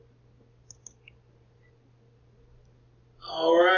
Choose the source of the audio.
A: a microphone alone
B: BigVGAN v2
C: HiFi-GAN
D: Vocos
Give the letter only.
A